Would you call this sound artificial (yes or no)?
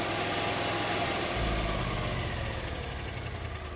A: no